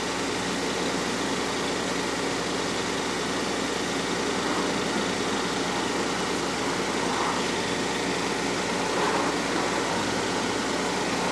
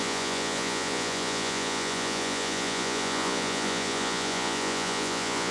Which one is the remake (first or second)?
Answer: second